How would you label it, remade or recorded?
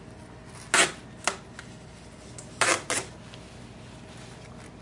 recorded